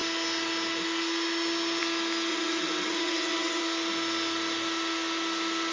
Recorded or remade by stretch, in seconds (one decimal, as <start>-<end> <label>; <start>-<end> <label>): 0.0-2.3 recorded; 2.3-3.6 remade; 3.6-5.7 recorded